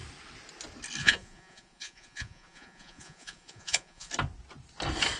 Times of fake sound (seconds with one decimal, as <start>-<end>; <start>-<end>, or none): 1.0-4.1